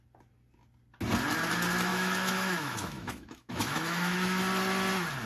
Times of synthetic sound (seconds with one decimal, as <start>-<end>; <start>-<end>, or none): 1.9-4.4